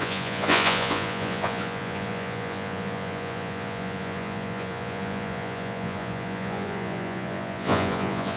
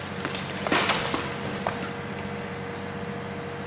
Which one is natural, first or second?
second